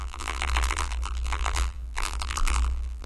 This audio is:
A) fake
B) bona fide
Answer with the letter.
A